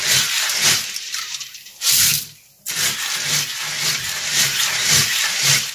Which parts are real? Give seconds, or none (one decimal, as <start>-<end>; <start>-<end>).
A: 2.1-3.9